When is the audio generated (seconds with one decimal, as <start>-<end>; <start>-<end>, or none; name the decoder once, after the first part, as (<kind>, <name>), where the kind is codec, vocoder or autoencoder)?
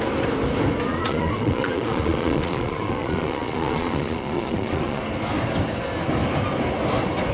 0.9-5.0 (vocoder, Vocos)